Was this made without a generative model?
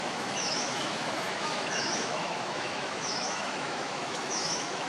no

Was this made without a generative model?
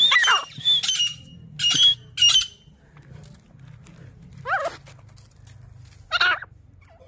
yes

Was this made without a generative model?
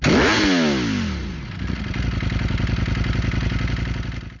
yes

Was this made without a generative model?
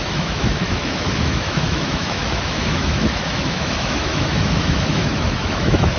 no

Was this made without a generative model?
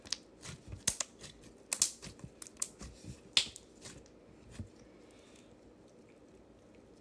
yes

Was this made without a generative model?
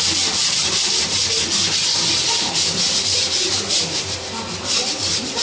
no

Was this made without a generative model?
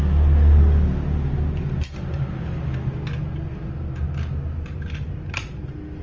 yes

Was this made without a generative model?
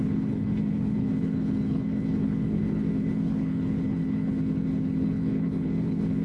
no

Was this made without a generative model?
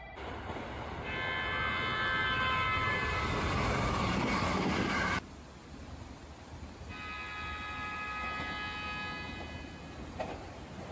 yes